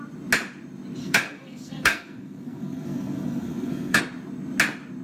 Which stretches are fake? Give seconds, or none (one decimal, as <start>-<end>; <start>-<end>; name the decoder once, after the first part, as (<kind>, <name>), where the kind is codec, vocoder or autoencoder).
1.0-4.0 (codec, SNAC)